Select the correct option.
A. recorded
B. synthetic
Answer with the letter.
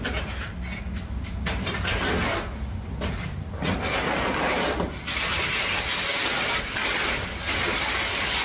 A